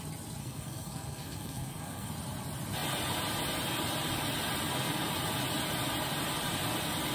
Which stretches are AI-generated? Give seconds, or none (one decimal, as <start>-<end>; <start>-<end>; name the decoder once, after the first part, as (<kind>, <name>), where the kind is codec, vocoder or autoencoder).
0.4-2.1 (codec, SNAC)